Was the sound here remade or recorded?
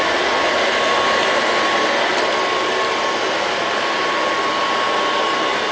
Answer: recorded